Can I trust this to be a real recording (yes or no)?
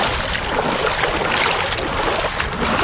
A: yes